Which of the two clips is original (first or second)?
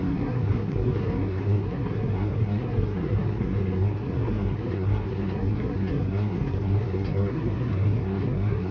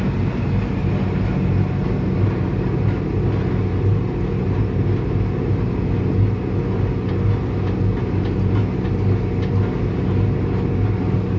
second